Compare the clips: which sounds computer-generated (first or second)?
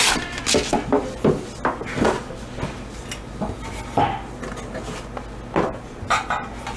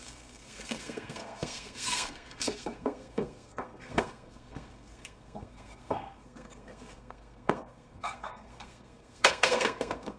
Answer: second